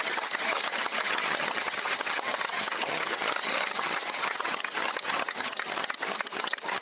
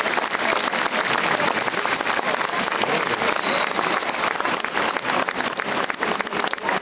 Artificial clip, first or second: first